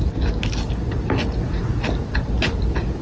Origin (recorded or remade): recorded